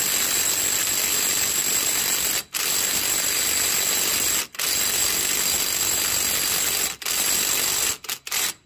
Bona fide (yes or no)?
yes